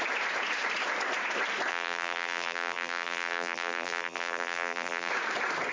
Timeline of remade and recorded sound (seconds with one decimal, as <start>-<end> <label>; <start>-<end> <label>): 0.0-1.7 recorded; 1.7-5.1 remade; 5.1-5.7 recorded

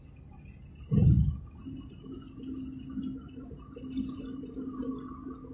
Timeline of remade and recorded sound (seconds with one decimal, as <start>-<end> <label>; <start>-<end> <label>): 0.0-5.5 recorded

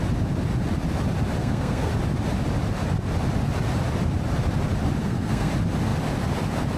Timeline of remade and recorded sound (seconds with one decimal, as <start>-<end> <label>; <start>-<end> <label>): 0.0-1.4 recorded; 1.4-1.9 remade; 1.9-5.0 recorded; 5.0-5.5 remade; 5.5-6.8 recorded

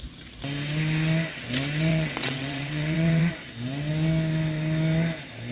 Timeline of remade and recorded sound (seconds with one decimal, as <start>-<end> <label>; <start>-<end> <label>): 0.0-1.9 recorded; 1.9-3.3 remade; 3.3-5.5 recorded